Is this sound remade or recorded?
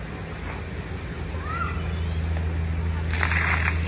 recorded